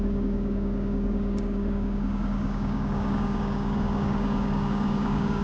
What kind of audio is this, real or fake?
fake